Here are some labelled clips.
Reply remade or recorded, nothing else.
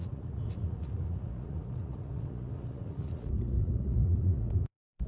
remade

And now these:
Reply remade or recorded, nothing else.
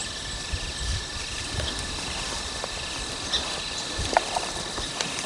recorded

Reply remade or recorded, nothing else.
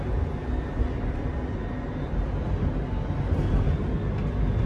recorded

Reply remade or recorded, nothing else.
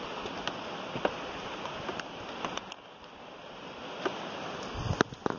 recorded